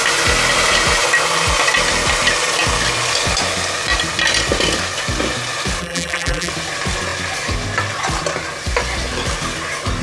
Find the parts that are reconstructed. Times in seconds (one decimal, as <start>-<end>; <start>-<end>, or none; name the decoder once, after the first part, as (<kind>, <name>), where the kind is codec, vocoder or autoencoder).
5.8-6.5 (vocoder, BigVGAN v2)